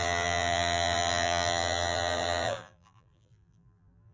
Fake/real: fake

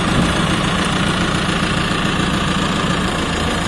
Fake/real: fake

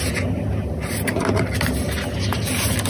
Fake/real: real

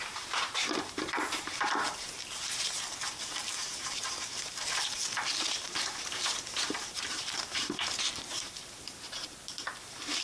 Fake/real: fake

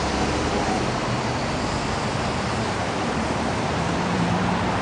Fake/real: fake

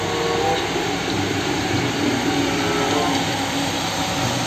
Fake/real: real